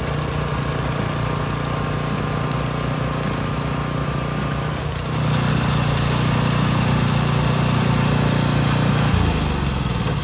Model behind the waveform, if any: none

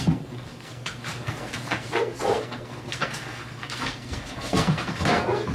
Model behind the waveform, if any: codec, SNAC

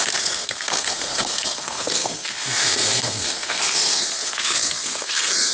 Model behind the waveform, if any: codec, SNAC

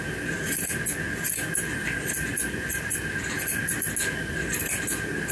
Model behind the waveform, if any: none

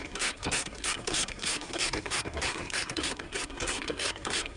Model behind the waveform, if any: codec, SNAC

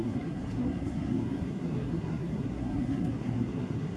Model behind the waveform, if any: codec, SNAC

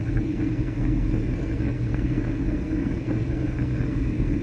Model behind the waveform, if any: codec, SNAC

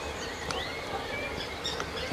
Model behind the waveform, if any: none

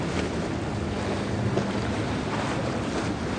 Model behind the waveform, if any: none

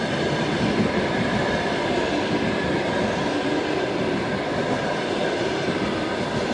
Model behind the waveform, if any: none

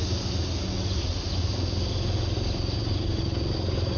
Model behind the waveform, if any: none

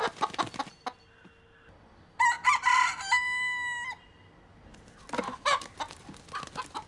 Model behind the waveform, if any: none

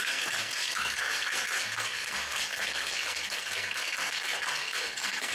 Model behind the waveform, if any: codec, SNAC